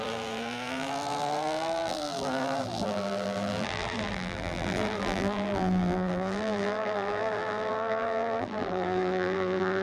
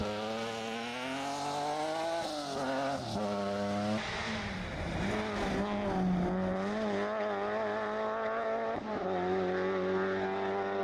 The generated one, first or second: first